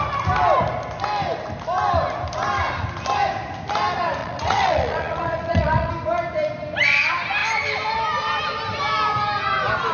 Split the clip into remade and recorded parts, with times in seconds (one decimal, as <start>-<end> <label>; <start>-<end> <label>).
0.0-4.2 recorded; 4.2-5.9 remade; 5.9-9.9 recorded